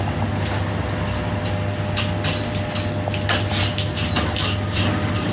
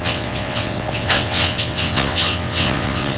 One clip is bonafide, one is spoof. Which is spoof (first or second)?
second